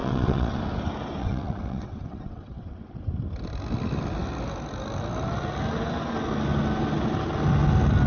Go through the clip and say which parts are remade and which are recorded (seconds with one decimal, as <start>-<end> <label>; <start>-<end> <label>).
0.0-0.6 remade; 0.6-1.2 recorded; 1.2-3.0 remade; 3.0-8.1 recorded

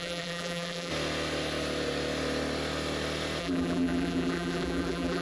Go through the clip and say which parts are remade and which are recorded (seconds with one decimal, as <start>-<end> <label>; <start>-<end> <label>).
0.0-0.9 remade; 0.9-3.4 recorded; 3.4-5.2 remade

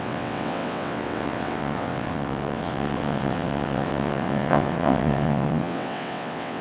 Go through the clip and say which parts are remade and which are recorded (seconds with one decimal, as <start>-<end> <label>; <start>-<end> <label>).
0.0-6.6 remade

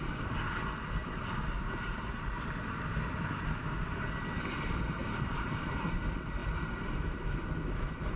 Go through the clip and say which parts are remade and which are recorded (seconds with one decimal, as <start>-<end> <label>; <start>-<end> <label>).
0.0-5.0 recorded; 5.0-6.0 remade; 6.0-8.2 recorded

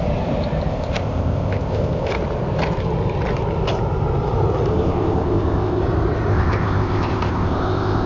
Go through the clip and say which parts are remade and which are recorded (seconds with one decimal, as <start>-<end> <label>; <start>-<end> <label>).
0.0-0.7 recorded; 0.7-2.1 remade; 2.1-4.7 recorded; 4.7-5.8 remade; 5.8-6.3 recorded; 6.3-8.1 remade

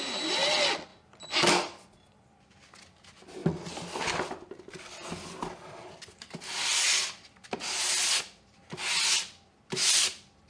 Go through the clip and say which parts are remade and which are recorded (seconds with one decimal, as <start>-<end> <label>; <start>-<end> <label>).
0.0-10.5 recorded

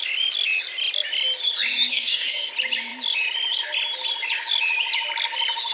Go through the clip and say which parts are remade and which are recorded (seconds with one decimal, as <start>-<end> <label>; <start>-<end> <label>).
0.0-1.9 recorded; 1.9-2.5 remade; 2.5-5.7 recorded

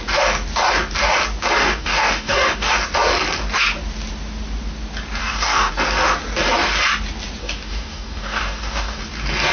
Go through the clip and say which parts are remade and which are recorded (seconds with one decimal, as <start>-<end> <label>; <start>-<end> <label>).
0.0-1.6 recorded; 1.6-2.7 remade; 2.7-5.2 recorded; 5.2-5.7 remade; 5.7-7.4 recorded; 7.4-9.0 remade; 9.0-9.5 recorded